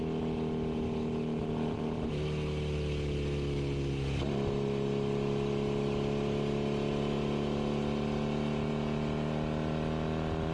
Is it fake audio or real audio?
real